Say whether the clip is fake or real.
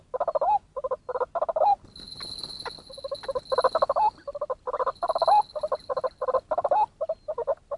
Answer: real